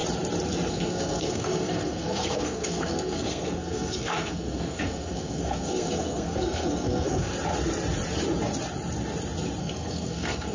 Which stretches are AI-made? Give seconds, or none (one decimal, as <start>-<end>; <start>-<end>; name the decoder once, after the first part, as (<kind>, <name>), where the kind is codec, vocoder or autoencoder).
0.7-7.3 (codec, SNAC); 9.6-10.5